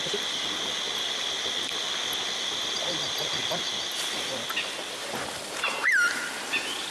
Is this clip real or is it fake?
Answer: real